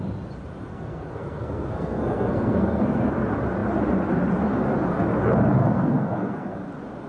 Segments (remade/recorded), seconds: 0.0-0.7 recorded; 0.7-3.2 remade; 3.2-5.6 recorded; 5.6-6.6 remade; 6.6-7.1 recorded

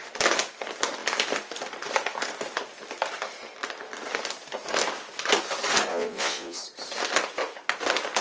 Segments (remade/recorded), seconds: 0.0-5.9 recorded; 5.9-6.6 remade; 6.6-8.2 recorded